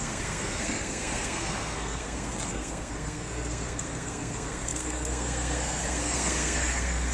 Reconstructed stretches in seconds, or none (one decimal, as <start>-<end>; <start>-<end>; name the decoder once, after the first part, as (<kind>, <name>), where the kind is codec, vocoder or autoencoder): 0.0-7.1 (codec, SNAC)